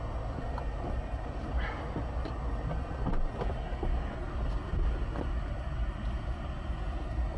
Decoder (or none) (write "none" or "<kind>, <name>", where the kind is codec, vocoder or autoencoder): none